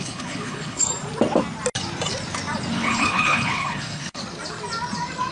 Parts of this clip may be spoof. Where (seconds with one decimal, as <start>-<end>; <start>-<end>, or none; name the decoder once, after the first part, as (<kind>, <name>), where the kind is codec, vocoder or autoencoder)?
0.0-0.9 (codec, HILCodec); 2.7-4.2